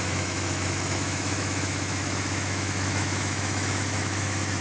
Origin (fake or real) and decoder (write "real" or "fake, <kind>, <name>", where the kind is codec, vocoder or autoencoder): fake, autoencoder, DAC-VAE